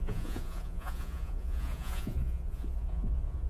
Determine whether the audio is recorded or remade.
remade